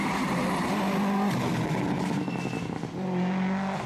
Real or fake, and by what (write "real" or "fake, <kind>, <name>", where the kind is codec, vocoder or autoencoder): real